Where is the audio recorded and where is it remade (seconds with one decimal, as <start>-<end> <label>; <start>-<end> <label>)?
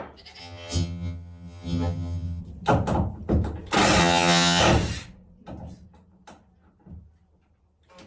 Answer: 0.0-0.4 recorded; 0.4-2.4 remade; 2.4-4.0 recorded; 4.0-4.6 remade; 4.6-8.1 recorded